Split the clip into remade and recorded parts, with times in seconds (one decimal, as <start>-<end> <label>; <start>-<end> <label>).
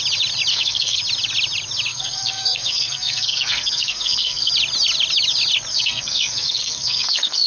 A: 0.0-0.5 recorded; 0.5-1.0 remade; 1.0-1.9 recorded; 1.9-4.5 remade; 4.5-5.7 recorded; 5.7-7.5 remade